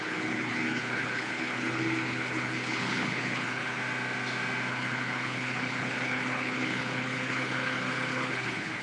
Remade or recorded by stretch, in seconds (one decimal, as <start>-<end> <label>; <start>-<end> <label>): 0.0-3.8 remade; 3.8-4.7 recorded; 4.7-8.8 remade